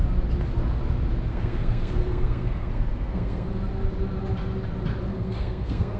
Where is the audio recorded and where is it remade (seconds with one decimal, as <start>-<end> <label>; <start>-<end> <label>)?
0.0-1.3 recorded; 1.3-3.5 remade; 3.5-5.1 recorded; 5.1-6.0 remade